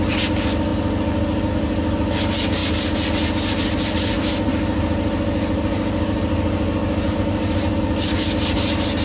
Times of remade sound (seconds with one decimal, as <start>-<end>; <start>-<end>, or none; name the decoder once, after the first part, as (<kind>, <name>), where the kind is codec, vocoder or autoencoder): none